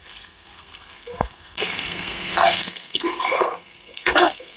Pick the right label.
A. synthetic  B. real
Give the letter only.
A